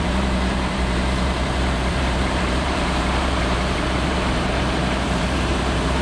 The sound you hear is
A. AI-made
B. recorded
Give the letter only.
A